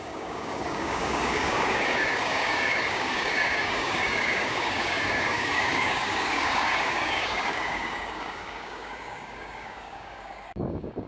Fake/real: fake